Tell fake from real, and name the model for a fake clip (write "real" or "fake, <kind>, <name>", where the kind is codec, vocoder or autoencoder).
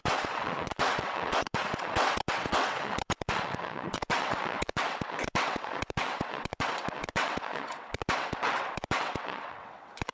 fake, vocoder, WaveNeXt